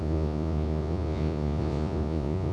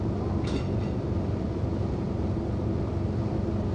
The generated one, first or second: first